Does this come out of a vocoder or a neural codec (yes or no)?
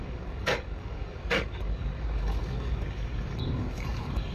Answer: yes